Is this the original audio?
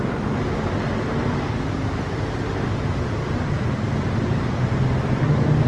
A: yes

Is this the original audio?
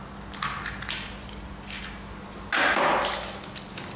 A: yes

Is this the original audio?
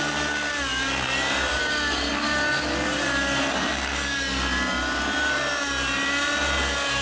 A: yes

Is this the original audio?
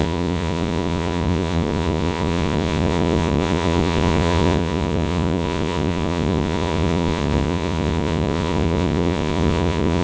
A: no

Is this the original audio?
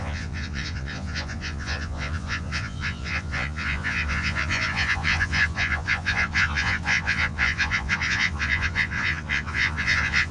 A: no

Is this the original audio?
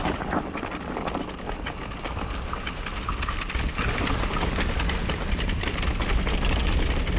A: yes